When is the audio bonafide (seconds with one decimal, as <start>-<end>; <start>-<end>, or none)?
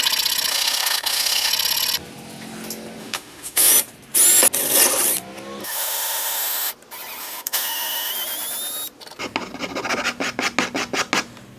0.0-0.5; 1.5-3.0; 3.7-5.6; 6.7-7.2; 8.1-11.6